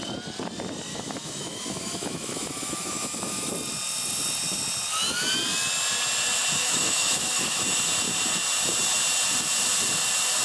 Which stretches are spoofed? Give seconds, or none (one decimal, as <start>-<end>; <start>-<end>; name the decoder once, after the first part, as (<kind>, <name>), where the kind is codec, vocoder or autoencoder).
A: 0.9-3.5 (autoencoder, DAC-VAE); 6.6-7.6